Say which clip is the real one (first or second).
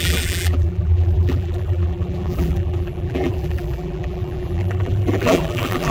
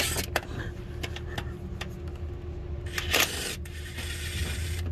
second